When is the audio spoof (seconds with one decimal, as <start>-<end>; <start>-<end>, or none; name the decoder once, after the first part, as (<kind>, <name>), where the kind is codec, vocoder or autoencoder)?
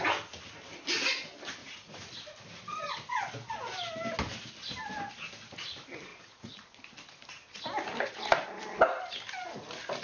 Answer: 1.6-2.1 (vocoder, Vocos); 6.1-6.8